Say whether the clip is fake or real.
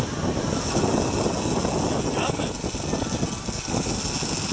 real